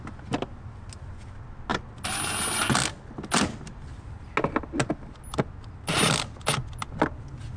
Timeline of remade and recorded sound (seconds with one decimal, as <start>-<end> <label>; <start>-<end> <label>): 0.0-7.6 recorded

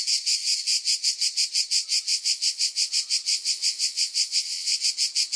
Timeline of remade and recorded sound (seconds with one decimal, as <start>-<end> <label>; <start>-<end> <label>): 0.0-2.1 recorded; 2.1-2.9 remade; 2.9-3.3 recorded; 3.3-4.8 remade; 4.8-5.4 recorded

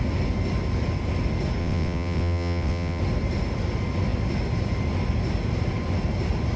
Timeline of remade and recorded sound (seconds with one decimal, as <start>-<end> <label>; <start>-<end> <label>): 0.0-1.6 recorded; 1.6-3.0 remade; 3.0-6.6 recorded

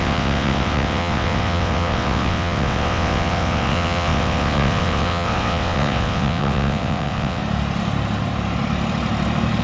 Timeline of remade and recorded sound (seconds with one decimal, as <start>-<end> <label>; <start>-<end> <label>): 0.0-7.4 remade; 7.4-9.6 recorded

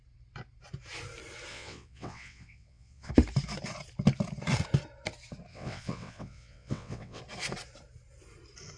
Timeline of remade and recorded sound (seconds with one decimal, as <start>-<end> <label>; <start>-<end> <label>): 0.0-1.5 recorded; 1.5-3.1 remade; 3.1-5.5 recorded; 5.5-7.2 remade; 7.2-8.8 recorded

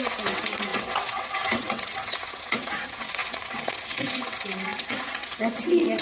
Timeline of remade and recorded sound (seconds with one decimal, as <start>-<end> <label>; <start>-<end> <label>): 0.0-6.0 remade

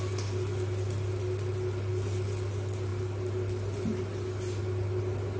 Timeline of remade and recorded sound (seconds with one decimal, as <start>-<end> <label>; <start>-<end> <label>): 0.0-5.4 recorded